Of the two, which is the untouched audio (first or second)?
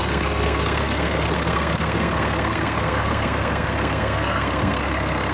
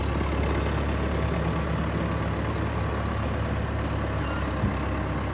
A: second